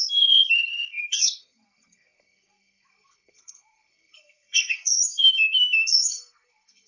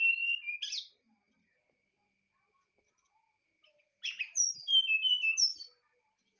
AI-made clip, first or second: first